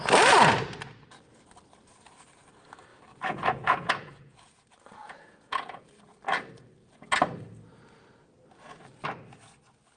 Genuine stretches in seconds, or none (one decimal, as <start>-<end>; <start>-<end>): 0.0-2.9; 4.6-5.0; 5.9-10.0